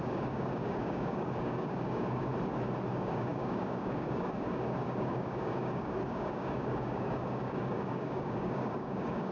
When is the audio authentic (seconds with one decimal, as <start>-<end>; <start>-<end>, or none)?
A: 2.3-2.9